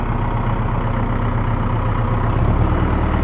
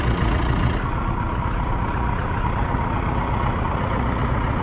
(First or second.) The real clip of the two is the first